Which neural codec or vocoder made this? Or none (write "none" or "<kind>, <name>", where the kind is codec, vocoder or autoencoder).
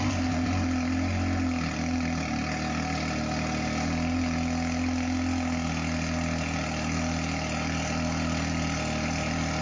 none